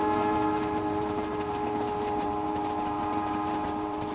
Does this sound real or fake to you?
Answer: fake